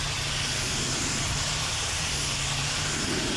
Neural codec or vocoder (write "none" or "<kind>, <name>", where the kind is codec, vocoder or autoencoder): none